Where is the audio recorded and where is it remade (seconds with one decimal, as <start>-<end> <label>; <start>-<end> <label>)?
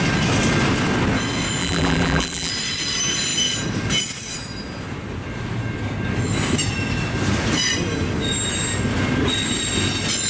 0.0-1.6 recorded; 1.6-2.5 remade; 2.5-10.3 recorded